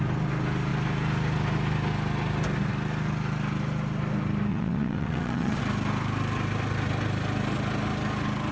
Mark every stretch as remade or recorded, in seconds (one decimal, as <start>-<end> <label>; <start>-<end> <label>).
0.0-4.5 recorded; 4.5-5.6 remade; 5.6-8.5 recorded